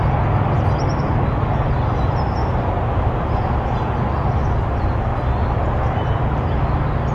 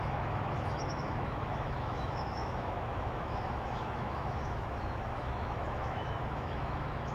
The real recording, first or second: first